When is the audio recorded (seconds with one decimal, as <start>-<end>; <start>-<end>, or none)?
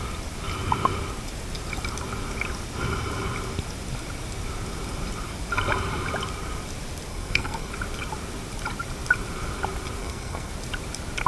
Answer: 0.0-7.1; 7.7-10.0; 10.5-11.3